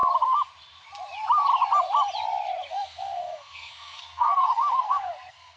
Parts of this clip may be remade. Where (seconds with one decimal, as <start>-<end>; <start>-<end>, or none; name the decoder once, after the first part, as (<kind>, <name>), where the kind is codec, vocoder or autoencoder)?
2.7-5.6 (codec, SNAC)